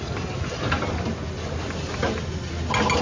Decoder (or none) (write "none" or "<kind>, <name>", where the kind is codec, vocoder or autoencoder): none